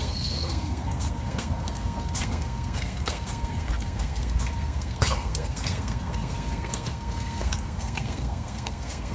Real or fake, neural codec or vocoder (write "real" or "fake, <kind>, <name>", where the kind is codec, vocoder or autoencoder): fake, codec, SNAC